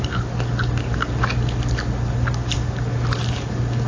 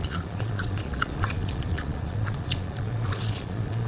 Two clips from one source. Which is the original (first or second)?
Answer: first